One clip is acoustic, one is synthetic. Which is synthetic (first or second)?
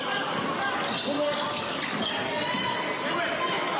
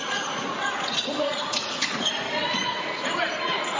second